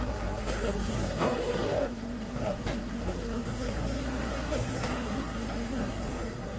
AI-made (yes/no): yes